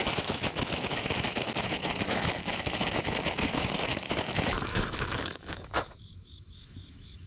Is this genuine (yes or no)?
no